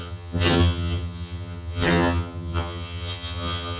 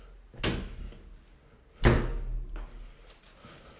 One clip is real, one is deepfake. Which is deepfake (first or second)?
first